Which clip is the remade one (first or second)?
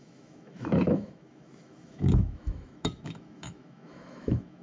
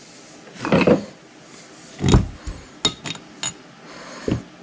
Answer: first